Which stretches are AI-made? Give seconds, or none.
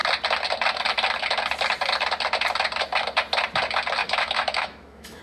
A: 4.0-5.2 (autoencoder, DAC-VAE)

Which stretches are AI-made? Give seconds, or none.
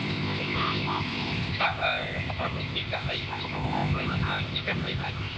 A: 0.0-5.4 (codec, ZipCodec)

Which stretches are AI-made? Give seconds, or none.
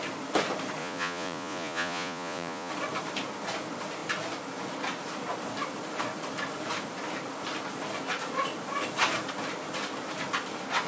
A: 0.8-2.7 (vocoder, Vocos)